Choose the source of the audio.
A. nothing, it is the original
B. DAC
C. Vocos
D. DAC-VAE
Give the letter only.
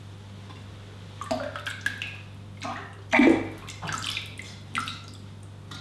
A